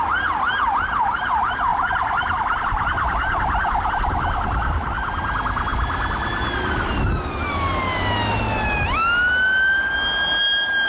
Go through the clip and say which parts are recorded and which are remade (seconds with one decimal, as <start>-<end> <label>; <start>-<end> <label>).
0.0-1.7 recorded; 1.7-3.9 remade; 3.9-10.9 recorded